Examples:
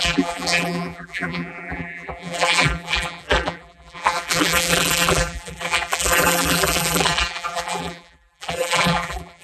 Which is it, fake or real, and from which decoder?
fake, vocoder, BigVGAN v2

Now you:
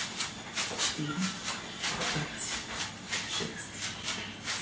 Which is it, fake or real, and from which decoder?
real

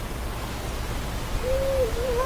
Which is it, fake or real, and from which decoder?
real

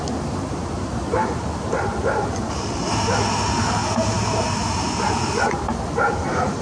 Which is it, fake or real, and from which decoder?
fake, vocoder, BigVGAN v2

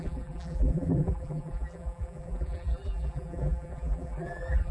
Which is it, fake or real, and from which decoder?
fake, vocoder, BigVGAN v2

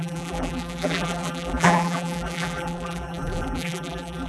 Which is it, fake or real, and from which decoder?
fake, vocoder, BigVGAN v2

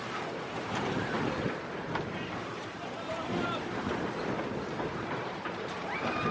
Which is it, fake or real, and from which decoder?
fake, vocoder, BigVGAN v2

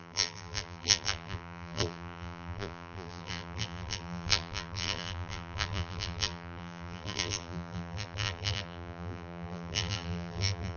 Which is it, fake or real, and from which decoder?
fake, vocoder, BigVGAN v2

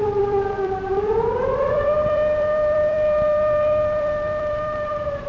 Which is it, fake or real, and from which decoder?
fake, vocoder, BigVGAN v2